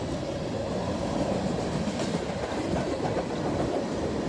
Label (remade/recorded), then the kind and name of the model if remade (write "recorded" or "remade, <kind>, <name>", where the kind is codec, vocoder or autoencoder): recorded